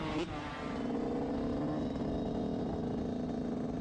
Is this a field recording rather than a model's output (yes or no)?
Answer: yes